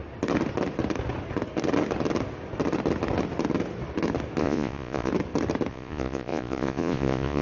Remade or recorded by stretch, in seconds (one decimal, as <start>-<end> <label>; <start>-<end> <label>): 0.0-4.4 recorded; 4.4-5.1 remade; 5.1-5.7 recorded; 5.7-7.4 remade